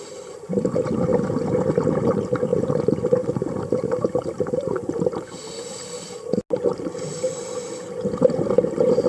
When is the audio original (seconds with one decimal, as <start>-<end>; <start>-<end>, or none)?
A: 0.0-9.1